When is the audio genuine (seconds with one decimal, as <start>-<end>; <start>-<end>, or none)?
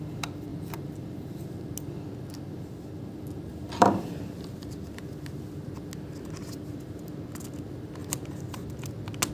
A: 0.0-0.5; 1.7-3.5; 5.0-6.4; 7.1-9.3